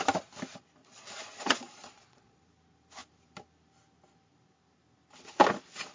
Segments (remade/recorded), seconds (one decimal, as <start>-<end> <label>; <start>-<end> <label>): 0.0-0.8 recorded; 0.8-2.4 remade; 2.4-5.9 recorded